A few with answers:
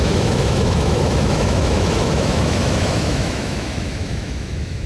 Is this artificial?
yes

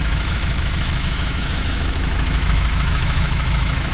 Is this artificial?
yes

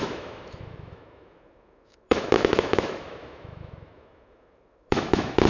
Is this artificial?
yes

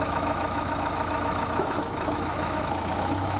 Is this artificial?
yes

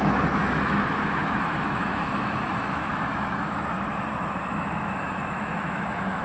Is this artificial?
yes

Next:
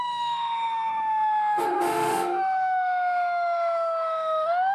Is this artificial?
yes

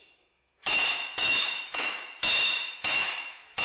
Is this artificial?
yes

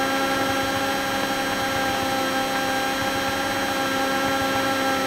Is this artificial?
no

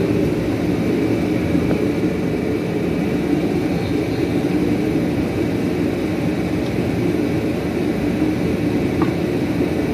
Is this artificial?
no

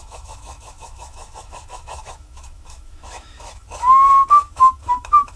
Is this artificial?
yes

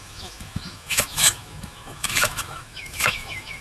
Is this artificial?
yes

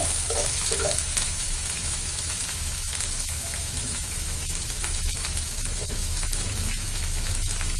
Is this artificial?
yes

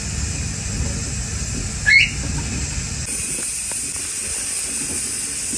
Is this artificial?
no